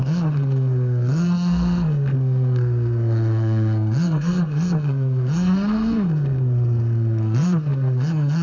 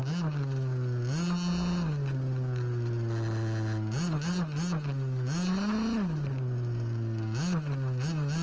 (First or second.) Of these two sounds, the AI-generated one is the first